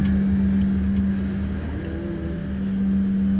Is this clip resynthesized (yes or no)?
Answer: no